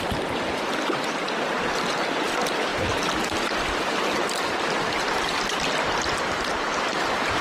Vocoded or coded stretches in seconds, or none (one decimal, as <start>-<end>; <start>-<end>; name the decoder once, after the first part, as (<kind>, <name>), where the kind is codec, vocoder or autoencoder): none

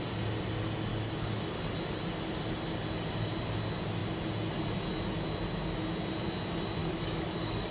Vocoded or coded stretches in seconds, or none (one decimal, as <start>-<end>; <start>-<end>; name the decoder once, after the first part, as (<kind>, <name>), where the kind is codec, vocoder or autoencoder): 0.9-1.6 (codec, DAC); 6.8-7.7

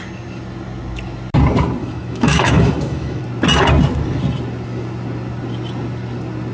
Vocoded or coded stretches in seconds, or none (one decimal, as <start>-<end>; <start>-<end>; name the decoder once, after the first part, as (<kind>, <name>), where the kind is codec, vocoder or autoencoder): 1.8-3.2 (autoencoder, DAC-VAE)